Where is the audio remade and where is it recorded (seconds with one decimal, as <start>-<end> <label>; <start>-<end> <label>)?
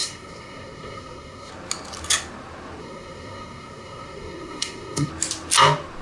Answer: 0.0-1.5 remade; 1.5-2.8 recorded; 2.8-5.1 remade; 5.1-6.0 recorded